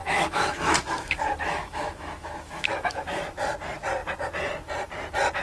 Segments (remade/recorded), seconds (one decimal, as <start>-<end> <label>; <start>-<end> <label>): 0.0-3.2 remade; 3.2-5.4 recorded